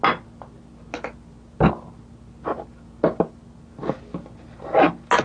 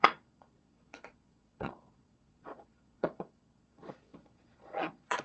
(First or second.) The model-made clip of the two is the second